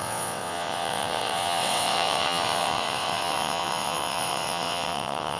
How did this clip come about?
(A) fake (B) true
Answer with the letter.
A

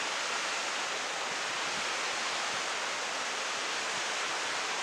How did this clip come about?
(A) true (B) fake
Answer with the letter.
A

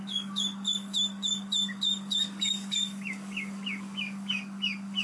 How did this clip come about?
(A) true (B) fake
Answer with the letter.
B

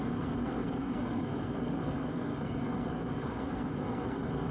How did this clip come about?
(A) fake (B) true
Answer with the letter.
A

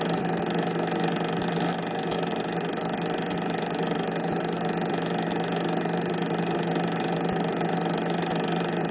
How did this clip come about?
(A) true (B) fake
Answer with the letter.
A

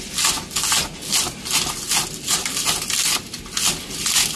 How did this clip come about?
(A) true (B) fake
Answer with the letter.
A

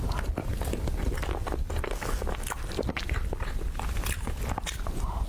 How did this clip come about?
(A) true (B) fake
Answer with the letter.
A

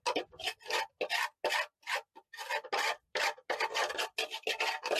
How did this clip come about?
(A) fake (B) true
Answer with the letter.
B